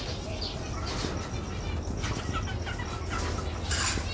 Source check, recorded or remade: recorded